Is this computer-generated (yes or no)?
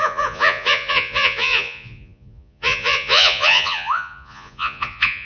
yes